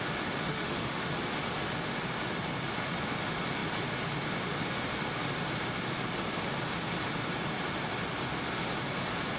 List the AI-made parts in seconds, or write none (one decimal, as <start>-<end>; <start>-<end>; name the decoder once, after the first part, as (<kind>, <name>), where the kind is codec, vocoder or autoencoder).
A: 0.5-1.1 (autoencoder, DAC-VAE)